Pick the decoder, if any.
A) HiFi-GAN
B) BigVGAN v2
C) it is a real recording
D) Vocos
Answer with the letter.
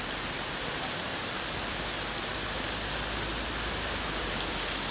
C